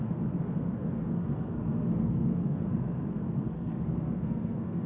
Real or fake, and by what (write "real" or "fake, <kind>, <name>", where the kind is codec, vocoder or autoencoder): fake, codec, SNAC